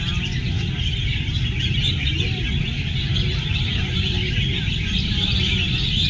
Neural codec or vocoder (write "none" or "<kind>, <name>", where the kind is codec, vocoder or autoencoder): none